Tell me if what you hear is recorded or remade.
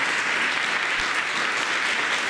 recorded